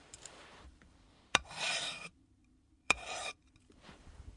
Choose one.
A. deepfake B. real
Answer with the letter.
A